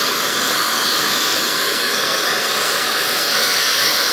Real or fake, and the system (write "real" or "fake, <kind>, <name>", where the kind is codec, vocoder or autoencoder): fake, codec, SNAC